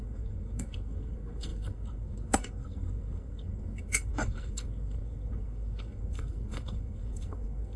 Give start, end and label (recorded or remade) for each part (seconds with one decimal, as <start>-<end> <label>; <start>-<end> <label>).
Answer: 0.0-7.8 remade